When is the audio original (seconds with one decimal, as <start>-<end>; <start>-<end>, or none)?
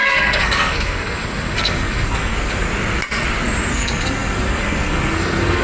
2.7-3.7